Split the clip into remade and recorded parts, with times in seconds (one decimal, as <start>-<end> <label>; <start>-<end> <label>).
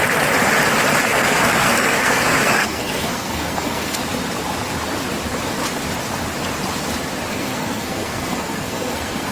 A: 0.0-1.0 recorded; 1.0-4.0 remade; 4.0-7.3 recorded; 7.3-9.3 remade